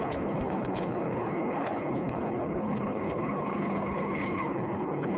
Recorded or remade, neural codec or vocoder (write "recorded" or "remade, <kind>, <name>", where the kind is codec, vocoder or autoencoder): remade, codec, HILCodec